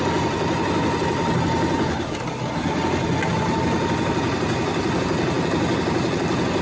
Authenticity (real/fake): real